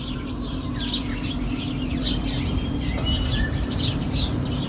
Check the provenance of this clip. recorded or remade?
remade